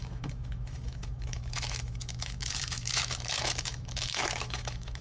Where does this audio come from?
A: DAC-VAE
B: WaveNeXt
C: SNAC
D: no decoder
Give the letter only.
A